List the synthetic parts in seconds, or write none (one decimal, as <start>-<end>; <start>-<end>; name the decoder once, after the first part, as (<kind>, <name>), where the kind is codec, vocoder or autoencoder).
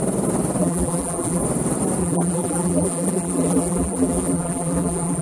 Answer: 0.6-1.4 (vocoder, BigVGAN v2); 2.0-5.2